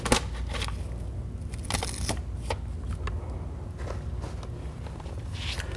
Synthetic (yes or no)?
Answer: no